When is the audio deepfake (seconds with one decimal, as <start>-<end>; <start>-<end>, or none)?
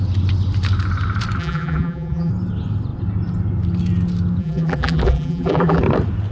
1.4-2.3; 4.4-5.8